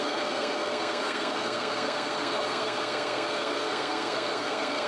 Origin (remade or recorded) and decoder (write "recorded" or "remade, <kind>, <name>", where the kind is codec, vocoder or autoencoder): remade, codec, SNAC